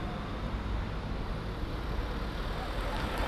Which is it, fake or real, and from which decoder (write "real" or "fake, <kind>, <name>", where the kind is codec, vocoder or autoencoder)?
real